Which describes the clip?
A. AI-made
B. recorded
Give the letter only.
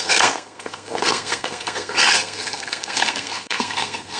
A